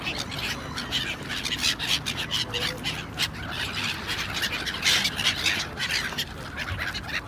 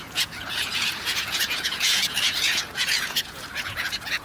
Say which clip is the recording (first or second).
first